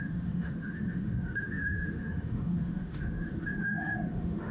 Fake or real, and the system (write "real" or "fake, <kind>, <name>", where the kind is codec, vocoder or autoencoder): fake, autoencoder, DAC-VAE